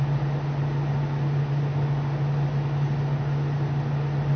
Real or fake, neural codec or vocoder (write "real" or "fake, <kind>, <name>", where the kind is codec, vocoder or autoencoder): real